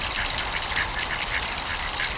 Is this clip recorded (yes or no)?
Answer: no